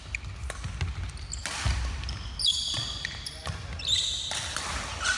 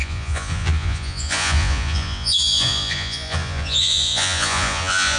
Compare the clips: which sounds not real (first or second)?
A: second